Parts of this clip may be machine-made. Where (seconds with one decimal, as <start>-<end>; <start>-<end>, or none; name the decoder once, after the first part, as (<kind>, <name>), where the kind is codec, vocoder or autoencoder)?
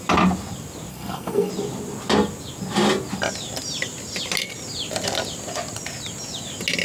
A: 0.9-1.5 (codec, SNAC)